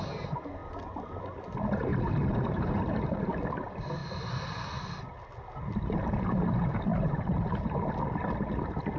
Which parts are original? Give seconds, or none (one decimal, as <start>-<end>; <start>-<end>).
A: 0.0-1.9; 3.2-6.9; 7.8-9.0